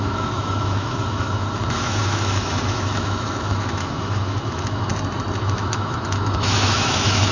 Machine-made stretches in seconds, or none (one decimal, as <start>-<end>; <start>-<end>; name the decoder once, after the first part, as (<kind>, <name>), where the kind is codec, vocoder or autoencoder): 0.0-4.9 (autoencoder, DAC-VAE); 5.4-7.3